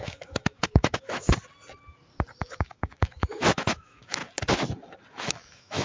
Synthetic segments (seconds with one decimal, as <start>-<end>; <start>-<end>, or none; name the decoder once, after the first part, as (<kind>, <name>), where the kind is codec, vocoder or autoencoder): 0.0-1.3 (autoencoder, DAC-VAE); 2.4-4.2; 5.1-5.8